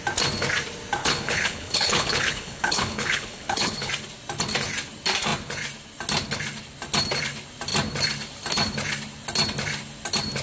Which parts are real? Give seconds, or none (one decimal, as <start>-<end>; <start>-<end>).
0.0-1.0; 3.9-10.4